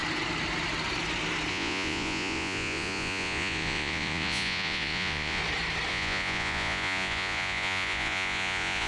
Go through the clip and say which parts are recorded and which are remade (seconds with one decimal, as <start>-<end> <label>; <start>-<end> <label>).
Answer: 0.0-1.5 recorded; 1.5-5.4 remade; 5.4-5.9 recorded; 5.9-8.9 remade

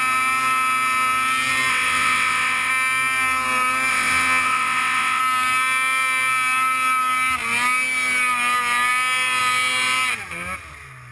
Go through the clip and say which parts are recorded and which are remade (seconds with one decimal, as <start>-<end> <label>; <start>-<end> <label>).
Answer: 0.0-1.7 recorded; 1.7-2.7 remade; 2.7-3.9 recorded; 3.9-5.2 remade; 5.2-11.1 recorded

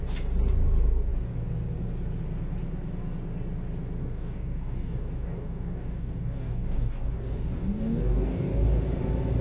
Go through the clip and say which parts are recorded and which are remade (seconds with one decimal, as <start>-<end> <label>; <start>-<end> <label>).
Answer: 0.0-4.0 recorded; 4.0-8.8 remade; 8.8-9.4 recorded